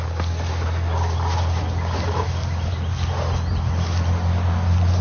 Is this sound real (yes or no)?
yes